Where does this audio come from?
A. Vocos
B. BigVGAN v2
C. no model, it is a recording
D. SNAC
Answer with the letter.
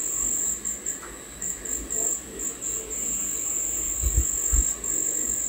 C